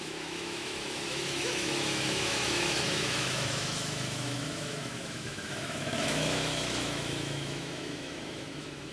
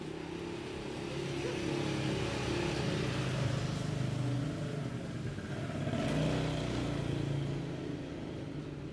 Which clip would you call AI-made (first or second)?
first